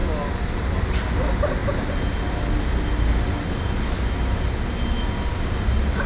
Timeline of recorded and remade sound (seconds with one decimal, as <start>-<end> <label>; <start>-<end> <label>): 0.0-6.1 recorded